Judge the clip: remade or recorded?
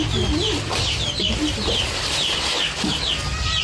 remade